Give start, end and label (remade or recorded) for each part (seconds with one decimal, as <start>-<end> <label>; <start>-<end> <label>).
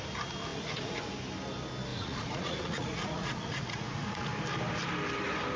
0.0-0.5 recorded; 0.5-1.1 remade; 1.1-1.9 recorded; 1.9-4.3 remade; 4.3-5.6 recorded